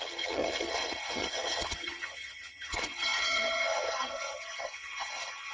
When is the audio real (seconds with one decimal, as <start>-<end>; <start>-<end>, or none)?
none